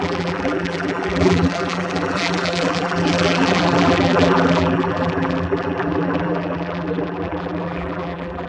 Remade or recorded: remade